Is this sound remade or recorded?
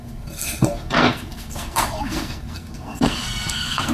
remade